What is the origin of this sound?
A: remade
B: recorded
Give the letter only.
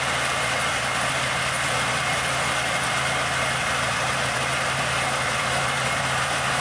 A